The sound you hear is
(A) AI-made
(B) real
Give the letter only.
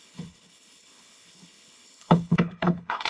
A